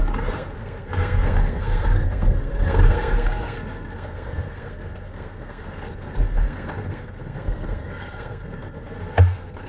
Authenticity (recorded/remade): remade